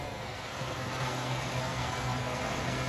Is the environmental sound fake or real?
fake